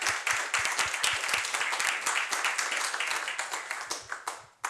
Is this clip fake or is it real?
real